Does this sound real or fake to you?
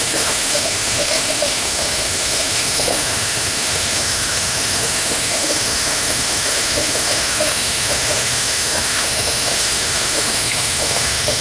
fake